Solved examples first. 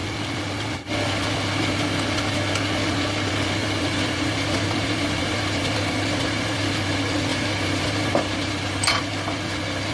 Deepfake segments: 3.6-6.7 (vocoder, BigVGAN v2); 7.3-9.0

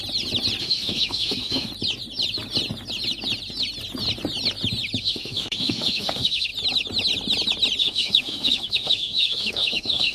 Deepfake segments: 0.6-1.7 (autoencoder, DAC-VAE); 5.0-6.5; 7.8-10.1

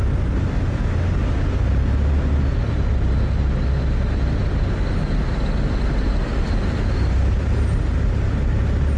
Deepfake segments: 6.3-8.6 (vocoder, BigVGAN v2)

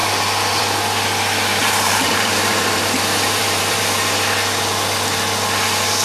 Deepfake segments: 1.6-3.8 (vocoder, BigVGAN v2)

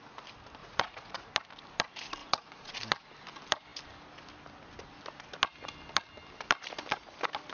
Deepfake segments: 0.6-1.3 (vocoder, Vocos); 2.2-2.7

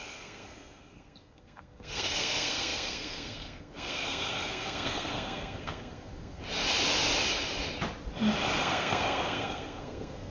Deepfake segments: 0.0-6.4 (codec, SNAC); 8.6-10.3

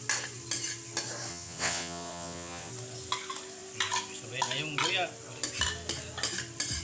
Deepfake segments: 1.3-2.7 (vocoder, WaveNeXt)

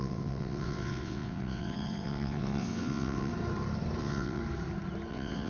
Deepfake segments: 0.0-3.3 (vocoder, WaveNeXt); 4.0-4.4; 5.1-5.5